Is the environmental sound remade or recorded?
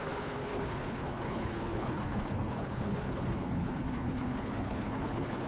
remade